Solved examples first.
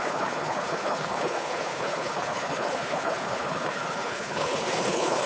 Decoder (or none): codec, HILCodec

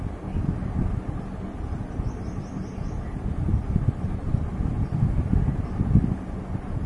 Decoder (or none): none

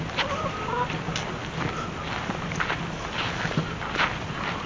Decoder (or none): none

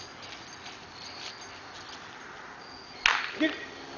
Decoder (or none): none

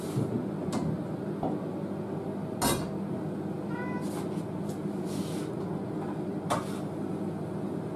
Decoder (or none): none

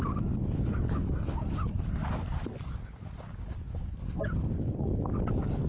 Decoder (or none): none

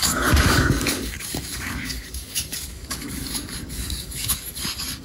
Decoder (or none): codec, DAC